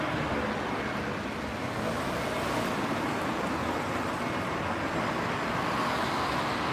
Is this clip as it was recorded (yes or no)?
yes